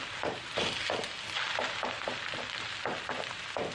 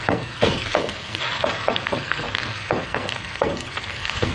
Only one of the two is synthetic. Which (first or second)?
second